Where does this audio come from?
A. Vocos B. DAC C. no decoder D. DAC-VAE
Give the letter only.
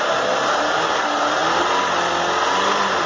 C